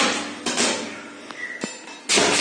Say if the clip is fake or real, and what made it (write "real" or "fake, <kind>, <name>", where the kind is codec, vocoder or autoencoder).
real